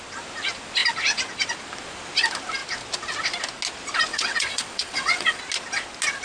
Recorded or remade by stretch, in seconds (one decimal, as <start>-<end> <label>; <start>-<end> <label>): 0.0-4.1 recorded; 4.1-5.4 remade; 5.4-6.2 recorded